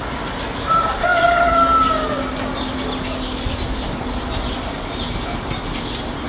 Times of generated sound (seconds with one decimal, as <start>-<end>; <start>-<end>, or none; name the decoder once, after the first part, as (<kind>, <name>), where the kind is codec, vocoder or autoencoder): none